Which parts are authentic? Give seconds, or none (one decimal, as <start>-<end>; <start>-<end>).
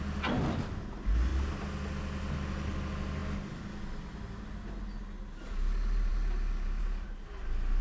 0.0-7.8